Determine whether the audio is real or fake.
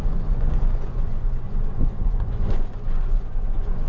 fake